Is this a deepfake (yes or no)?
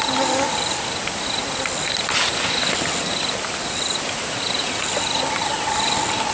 no